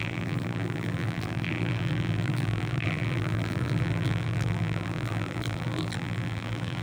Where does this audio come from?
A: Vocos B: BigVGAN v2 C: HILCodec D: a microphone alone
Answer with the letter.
B